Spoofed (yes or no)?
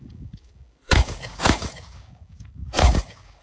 yes